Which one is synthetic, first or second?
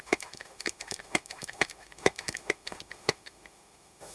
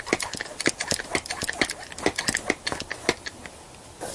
first